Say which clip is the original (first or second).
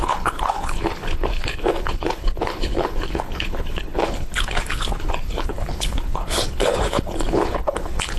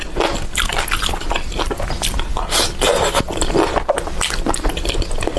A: second